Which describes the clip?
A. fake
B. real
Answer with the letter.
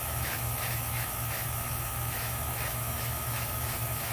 A